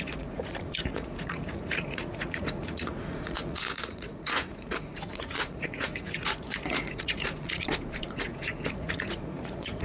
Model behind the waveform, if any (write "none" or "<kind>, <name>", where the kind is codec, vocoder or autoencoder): vocoder, Vocos